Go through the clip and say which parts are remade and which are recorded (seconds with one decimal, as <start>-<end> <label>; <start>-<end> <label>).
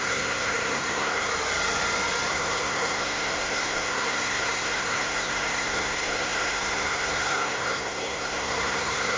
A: 0.0-1.3 remade; 1.3-2.3 recorded; 2.3-9.2 remade